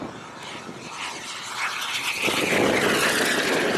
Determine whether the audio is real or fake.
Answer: real